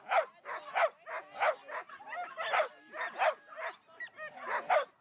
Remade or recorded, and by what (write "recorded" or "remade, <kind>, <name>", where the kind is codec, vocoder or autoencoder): recorded